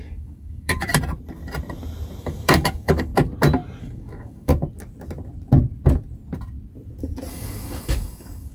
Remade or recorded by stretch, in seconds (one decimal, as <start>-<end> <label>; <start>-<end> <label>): 0.0-0.9 remade; 0.9-2.2 recorded; 2.2-3.1 remade; 3.1-3.8 recorded; 3.8-4.5 remade; 4.5-7.3 recorded; 7.3-8.5 remade